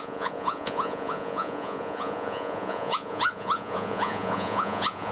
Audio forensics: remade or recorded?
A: remade